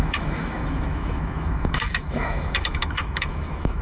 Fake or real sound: fake